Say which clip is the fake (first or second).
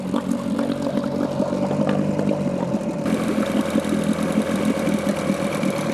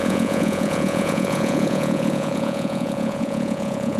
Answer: second